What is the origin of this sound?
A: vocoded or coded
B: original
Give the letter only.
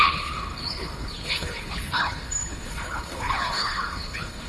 A